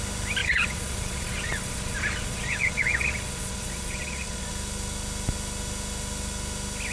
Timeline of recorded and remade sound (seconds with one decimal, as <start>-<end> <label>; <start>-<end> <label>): 0.0-0.4 recorded; 0.4-4.5 remade; 4.5-6.9 recorded

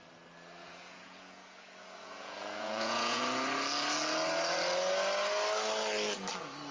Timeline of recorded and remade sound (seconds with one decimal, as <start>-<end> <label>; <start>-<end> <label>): 0.0-0.6 recorded; 0.6-3.2 remade; 3.2-6.7 recorded